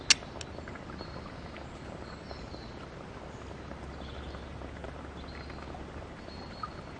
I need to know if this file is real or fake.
real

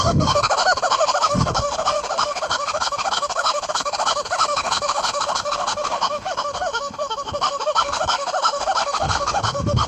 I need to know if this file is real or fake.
fake